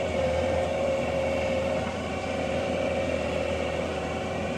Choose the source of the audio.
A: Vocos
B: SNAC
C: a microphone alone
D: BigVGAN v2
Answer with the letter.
D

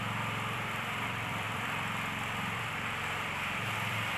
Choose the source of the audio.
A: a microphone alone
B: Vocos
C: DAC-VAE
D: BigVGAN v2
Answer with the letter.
D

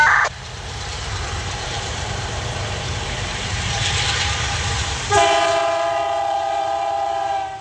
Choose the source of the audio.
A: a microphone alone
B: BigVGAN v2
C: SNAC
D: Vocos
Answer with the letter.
B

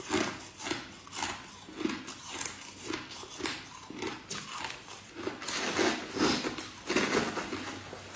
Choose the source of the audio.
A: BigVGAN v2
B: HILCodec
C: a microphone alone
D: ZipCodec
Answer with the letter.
C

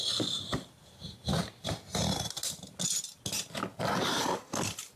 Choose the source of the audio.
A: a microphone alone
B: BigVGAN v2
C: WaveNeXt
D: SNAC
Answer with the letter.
A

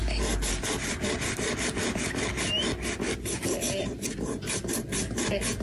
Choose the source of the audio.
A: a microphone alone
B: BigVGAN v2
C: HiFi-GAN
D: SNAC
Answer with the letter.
A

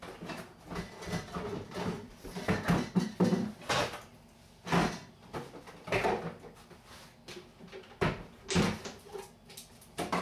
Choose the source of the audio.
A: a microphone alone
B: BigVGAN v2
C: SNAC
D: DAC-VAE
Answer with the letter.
A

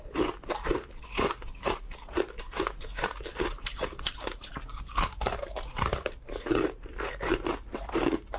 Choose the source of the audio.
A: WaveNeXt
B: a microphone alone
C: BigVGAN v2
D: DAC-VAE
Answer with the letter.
C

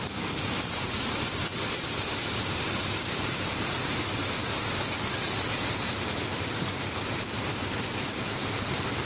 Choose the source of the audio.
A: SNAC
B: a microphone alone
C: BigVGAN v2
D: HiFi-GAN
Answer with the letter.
C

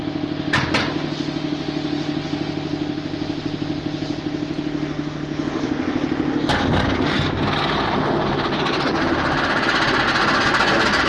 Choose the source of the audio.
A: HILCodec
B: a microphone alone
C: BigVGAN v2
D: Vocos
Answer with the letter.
B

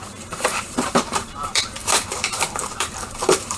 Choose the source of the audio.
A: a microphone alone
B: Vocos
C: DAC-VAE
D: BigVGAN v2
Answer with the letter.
D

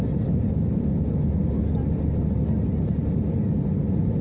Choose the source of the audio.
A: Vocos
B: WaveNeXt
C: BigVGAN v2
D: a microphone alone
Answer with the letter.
D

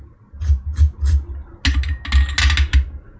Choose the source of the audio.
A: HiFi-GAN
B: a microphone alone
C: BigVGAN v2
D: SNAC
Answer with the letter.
B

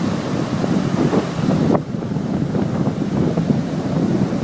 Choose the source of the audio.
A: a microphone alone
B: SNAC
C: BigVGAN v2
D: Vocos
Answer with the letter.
A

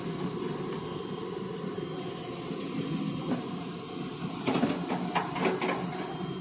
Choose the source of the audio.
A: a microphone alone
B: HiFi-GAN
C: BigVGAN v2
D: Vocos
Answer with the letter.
A